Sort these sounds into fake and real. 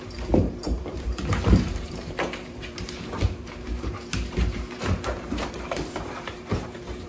fake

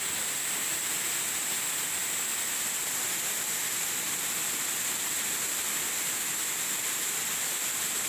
real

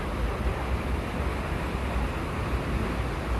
real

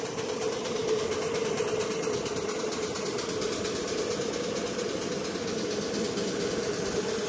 real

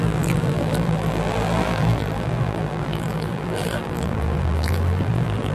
fake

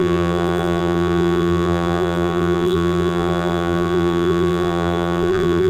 fake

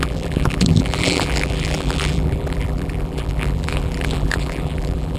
fake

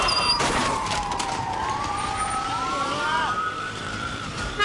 fake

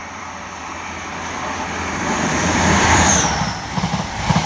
fake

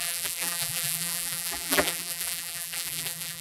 fake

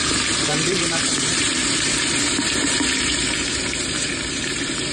fake